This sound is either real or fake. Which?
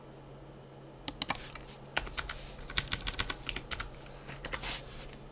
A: real